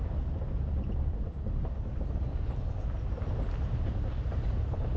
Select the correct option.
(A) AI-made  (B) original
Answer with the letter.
A